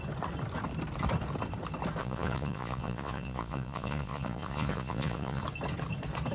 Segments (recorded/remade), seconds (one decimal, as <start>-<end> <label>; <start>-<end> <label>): 0.0-2.0 recorded; 2.0-5.4 remade; 5.4-6.3 recorded